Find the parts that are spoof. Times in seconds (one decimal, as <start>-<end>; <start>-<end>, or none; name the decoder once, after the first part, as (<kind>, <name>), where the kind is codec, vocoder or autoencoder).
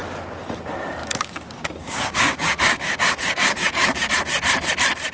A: 1.0-4.1 (codec, DAC)